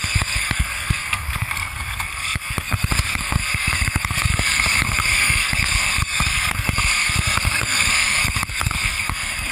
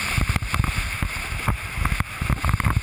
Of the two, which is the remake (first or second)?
first